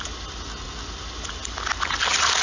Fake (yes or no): no